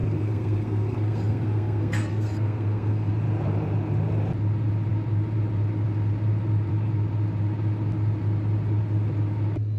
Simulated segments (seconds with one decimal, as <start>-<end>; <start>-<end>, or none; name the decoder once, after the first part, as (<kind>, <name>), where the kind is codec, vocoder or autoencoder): 0.0-3.1 (codec, SNAC)